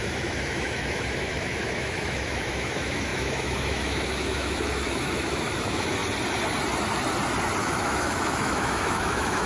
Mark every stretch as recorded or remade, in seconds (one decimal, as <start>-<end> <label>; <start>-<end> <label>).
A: 0.0-6.0 remade; 6.0-7.6 recorded; 7.6-9.5 remade